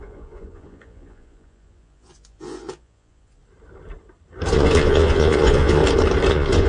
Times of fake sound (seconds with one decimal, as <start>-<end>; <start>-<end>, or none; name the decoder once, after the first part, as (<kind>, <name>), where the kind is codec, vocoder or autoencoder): 0.0-3.4 (vocoder, Vocos); 4.5-5.8; 6.3-6.7